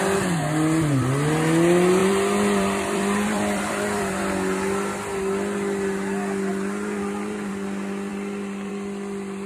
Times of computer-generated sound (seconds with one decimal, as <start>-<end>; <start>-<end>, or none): 2.0-4.2; 6.5-7.5